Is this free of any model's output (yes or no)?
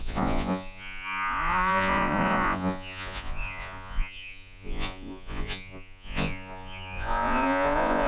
no